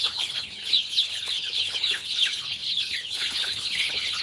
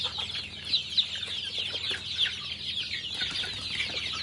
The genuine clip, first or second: second